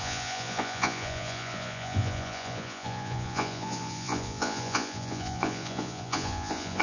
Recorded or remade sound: remade